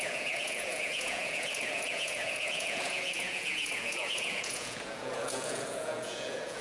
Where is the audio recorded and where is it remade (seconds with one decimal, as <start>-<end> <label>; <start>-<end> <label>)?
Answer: 0.0-6.6 remade